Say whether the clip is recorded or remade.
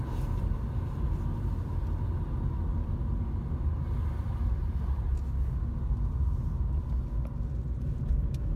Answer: recorded